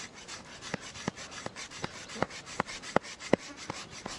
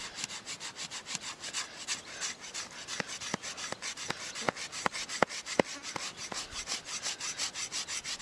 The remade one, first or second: first